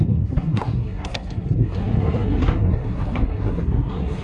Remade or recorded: remade